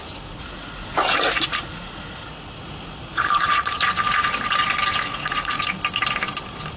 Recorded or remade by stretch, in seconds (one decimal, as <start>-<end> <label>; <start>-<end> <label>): 0.0-4.0 remade; 4.0-5.1 recorded; 5.1-5.6 remade; 5.6-6.8 recorded